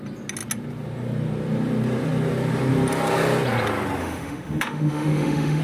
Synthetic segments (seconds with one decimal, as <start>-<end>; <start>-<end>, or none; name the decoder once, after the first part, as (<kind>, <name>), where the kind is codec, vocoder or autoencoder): 4.0-5.6 (autoencoder, DAC-VAE)